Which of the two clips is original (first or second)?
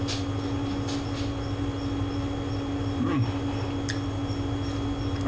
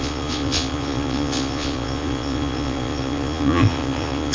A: first